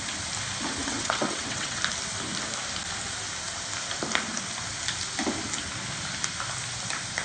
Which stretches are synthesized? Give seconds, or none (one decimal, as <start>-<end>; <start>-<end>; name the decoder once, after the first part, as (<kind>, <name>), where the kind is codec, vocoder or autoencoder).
0.8-1.8 (vocoder, WaveNeXt)